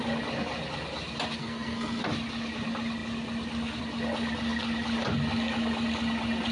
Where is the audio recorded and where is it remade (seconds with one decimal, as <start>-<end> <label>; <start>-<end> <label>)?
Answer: 0.0-1.4 recorded; 1.4-2.0 remade; 2.0-6.5 recorded